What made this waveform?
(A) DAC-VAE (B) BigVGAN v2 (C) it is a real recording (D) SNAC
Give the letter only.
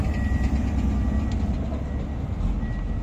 C